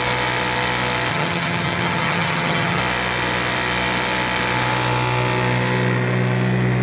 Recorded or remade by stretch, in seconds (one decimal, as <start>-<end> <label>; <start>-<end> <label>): 0.0-1.1 recorded; 1.1-2.8 remade; 2.8-6.8 recorded